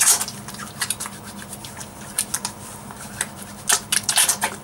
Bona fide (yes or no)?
yes